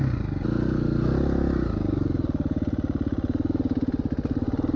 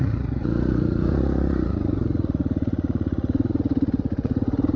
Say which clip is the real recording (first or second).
first